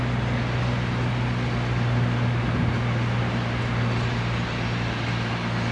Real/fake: real